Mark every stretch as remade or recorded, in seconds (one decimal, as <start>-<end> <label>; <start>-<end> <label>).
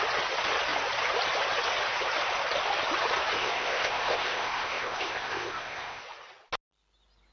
0.0-3.4 recorded; 3.4-6.0 remade; 6.0-7.3 recorded